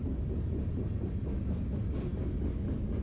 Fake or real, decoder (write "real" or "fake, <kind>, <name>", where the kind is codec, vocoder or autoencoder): real